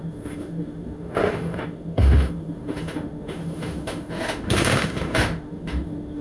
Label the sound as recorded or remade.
remade